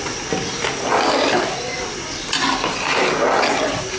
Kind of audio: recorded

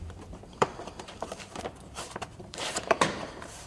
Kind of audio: remade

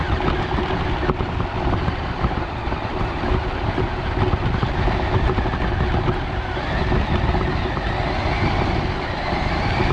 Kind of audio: recorded